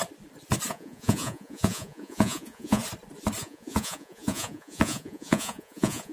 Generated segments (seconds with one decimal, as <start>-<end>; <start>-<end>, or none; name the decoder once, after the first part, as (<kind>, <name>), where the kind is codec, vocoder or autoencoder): 0.7-2.8 (vocoder, Vocos); 3.4-6.1